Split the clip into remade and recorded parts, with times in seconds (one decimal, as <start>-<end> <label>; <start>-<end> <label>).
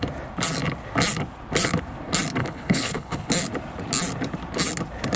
0.0-2.4 recorded; 2.4-3.3 remade; 3.3-5.2 recorded